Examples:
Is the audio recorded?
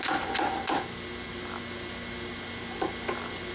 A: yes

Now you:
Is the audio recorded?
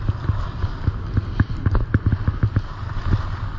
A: yes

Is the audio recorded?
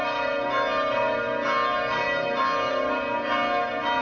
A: yes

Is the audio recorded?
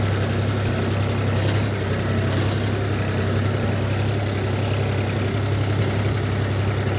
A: yes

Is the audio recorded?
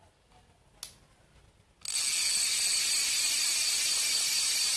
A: yes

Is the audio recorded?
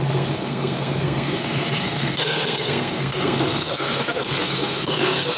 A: no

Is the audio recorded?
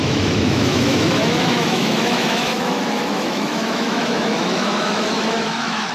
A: no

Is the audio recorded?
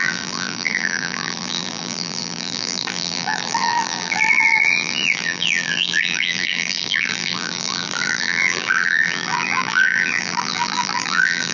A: no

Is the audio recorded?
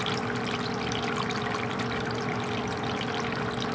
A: yes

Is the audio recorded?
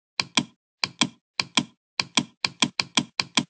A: yes